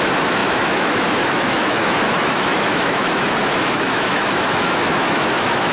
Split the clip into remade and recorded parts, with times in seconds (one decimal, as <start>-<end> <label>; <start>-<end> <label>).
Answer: 0.0-5.7 remade